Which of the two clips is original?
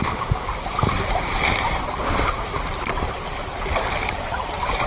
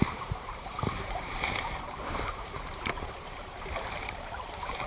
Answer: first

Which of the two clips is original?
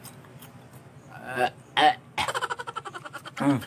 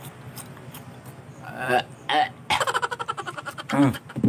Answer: first